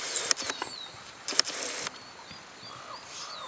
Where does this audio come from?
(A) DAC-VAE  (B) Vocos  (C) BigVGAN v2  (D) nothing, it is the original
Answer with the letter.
D